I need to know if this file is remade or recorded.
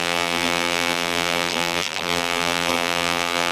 remade